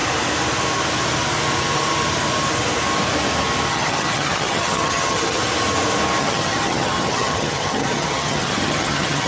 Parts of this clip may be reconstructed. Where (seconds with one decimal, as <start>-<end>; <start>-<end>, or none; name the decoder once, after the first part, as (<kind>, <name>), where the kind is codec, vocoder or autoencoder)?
3.7-5.4 (vocoder, HiFi-GAN); 6.2-9.3

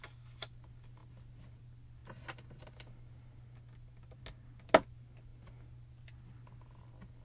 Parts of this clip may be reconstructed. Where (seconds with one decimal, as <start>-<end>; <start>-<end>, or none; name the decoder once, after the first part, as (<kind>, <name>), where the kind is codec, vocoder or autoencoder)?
none

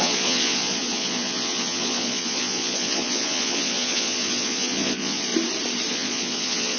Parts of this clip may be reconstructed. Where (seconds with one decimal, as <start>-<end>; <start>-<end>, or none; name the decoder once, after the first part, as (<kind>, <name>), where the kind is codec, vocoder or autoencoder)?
0.0-5.3 (vocoder, Vocos); 5.9-6.8

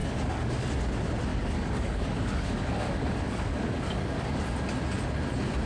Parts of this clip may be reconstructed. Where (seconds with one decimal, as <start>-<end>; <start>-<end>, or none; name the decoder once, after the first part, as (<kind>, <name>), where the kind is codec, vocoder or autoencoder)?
0.0-0.7 (codec, DAC); 1.3-4.4

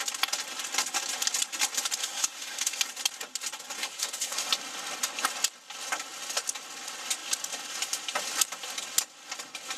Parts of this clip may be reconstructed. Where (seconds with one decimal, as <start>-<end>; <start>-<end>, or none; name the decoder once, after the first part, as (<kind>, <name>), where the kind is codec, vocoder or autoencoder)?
2.0-2.8 (autoencoder, DAC-VAE); 3.8-4.5

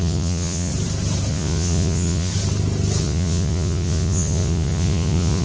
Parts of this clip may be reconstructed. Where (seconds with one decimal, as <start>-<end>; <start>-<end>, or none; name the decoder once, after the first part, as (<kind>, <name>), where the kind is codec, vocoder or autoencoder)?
0.0-0.7 (vocoder, Vocos); 1.3-2.3; 3.0-5.4